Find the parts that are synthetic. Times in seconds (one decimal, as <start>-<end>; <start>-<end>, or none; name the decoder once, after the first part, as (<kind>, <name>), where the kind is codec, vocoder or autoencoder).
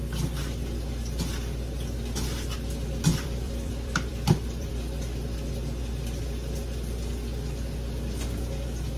3.1-4.7 (vocoder, BigVGAN v2)